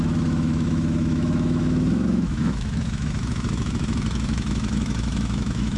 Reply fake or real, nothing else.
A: fake